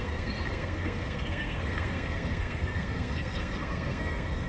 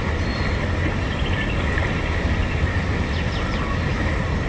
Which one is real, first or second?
second